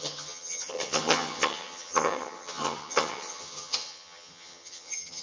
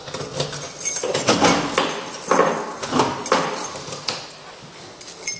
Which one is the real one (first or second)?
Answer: second